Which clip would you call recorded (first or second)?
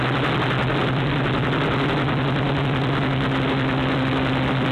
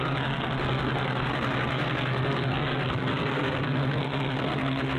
first